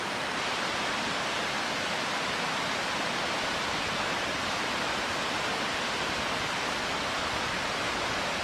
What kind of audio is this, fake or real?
real